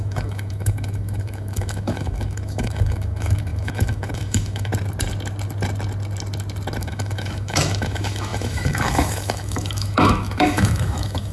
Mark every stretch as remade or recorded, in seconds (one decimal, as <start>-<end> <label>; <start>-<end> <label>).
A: 0.0-4.7 remade; 4.7-6.8 recorded; 6.8-11.3 remade